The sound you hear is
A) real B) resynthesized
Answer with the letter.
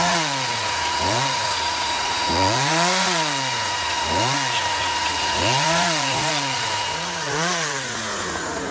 B